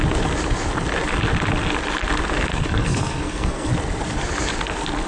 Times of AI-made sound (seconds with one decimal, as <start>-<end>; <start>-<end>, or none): 2.5-3.7